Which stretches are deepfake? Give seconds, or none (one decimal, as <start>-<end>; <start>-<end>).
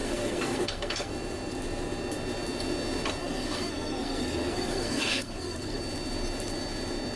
0.0-1.1; 3.2-5.8